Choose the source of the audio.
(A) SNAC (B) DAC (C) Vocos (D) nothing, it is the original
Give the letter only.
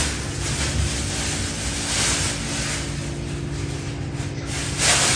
D